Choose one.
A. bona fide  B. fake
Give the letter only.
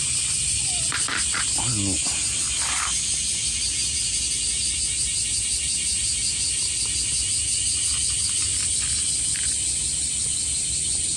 A